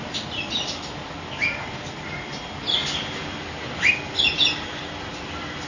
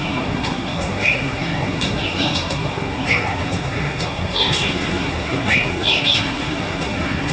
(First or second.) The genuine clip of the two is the first